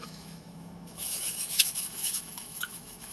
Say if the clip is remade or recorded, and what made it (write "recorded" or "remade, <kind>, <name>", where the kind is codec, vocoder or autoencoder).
remade, autoencoder, DAC-VAE